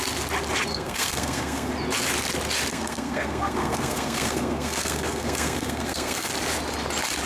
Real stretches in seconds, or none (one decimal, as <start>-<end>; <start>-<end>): 0.0-0.7; 1.7-2.7; 6.3-7.3

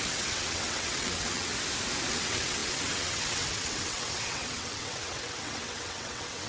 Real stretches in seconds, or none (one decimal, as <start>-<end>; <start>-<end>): 1.5-2.1